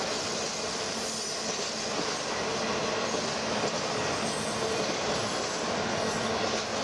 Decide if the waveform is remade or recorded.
recorded